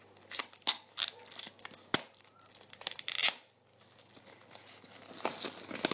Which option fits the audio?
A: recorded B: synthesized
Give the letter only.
A